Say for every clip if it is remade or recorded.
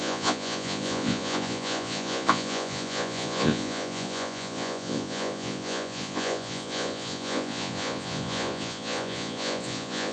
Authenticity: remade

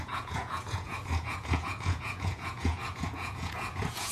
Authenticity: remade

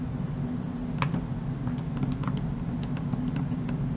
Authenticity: recorded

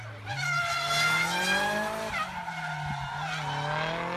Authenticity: recorded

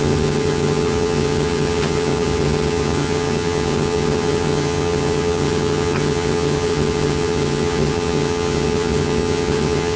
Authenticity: remade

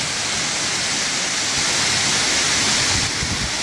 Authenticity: recorded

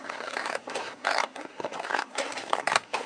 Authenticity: remade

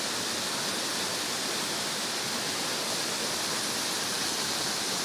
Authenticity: recorded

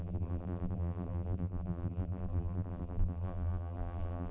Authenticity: remade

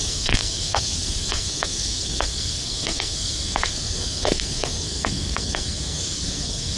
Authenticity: remade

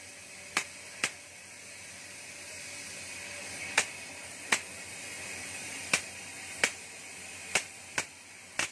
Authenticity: recorded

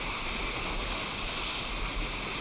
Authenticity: recorded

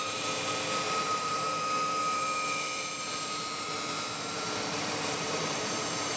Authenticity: remade